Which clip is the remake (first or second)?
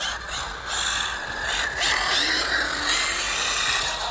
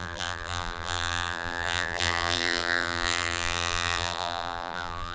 second